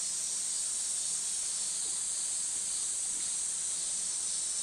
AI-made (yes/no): no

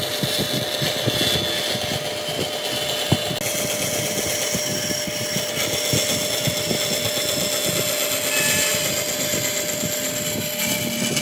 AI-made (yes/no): no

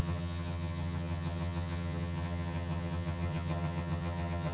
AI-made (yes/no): yes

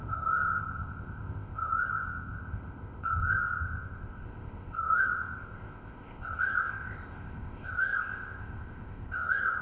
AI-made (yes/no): yes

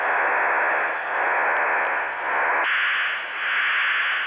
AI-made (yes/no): no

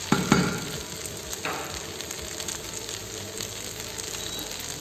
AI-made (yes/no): no